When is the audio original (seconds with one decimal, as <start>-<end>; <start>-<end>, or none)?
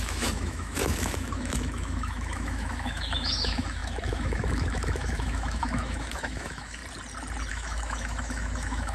6.8-7.5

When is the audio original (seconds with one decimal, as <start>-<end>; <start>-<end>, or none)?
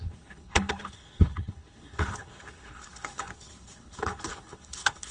none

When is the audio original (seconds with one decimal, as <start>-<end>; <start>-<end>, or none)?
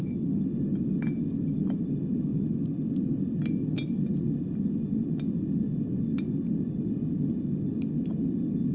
0.0-8.7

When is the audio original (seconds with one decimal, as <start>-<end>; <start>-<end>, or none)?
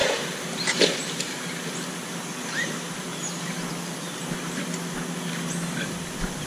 1.4-6.5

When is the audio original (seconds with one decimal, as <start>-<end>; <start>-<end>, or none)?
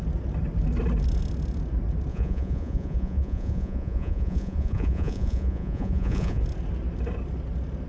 0.0-2.1; 6.4-7.9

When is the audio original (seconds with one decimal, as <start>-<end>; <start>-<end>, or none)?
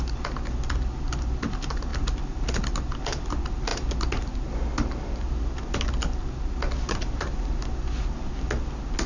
0.0-9.1